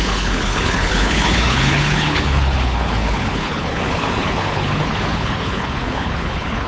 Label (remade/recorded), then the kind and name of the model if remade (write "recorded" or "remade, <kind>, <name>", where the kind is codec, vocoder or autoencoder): remade, codec, HILCodec